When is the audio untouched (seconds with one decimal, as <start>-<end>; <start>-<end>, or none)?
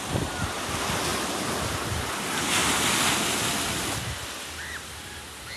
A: 0.0-5.6